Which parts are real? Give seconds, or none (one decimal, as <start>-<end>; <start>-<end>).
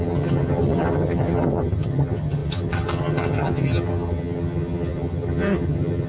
none